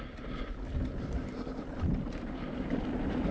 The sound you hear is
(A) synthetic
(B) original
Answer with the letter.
B